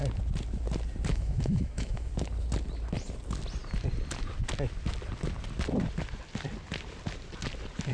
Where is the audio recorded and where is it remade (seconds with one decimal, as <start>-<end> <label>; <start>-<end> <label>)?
0.0-1.1 recorded; 1.1-2.1 remade; 2.1-7.9 recorded